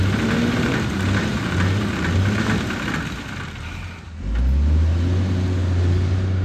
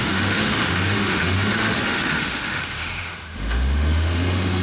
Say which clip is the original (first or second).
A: first